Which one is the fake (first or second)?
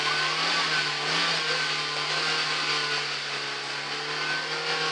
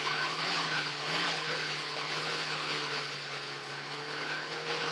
second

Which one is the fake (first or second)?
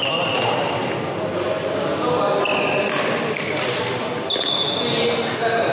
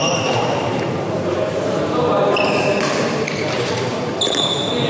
second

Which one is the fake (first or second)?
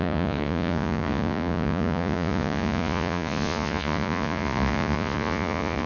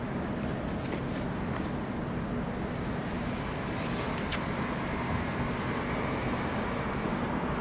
first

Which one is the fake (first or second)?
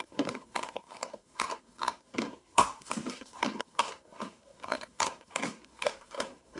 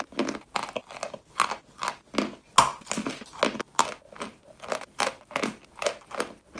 first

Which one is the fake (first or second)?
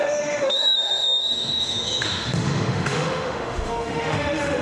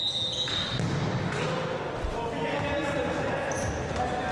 first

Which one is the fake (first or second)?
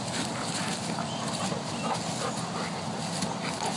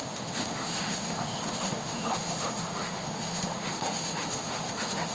second